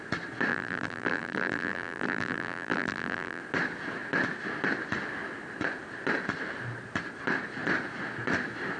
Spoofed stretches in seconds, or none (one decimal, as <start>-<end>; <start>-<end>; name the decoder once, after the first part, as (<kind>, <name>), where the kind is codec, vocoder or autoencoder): 0.5-3.4 (vocoder, BigVGAN v2)